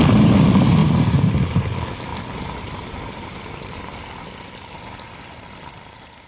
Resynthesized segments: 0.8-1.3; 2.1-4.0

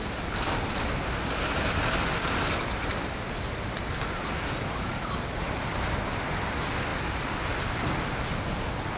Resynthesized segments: none

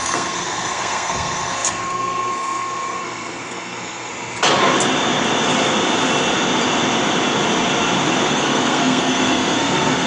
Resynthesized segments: 0.0-4.1; 8.3-10.1

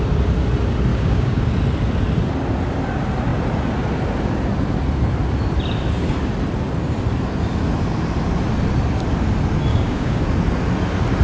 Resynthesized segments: 0.9-1.5; 9.7-10.2

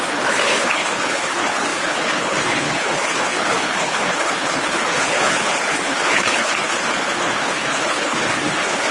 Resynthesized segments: 0.0-8.9

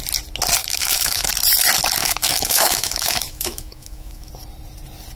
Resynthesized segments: 0.6-1.3; 2.0-4.3

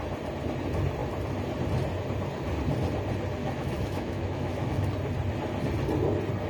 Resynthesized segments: 3.4-4.9

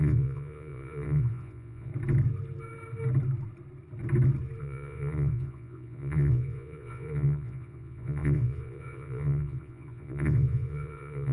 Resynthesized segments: 0.0-1.9; 4.6-11.3